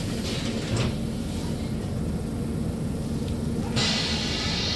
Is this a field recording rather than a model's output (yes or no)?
yes